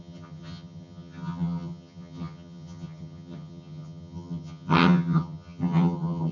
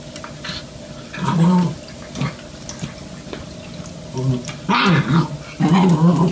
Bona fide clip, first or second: second